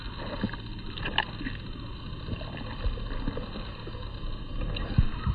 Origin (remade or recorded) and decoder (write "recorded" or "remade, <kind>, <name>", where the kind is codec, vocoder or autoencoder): recorded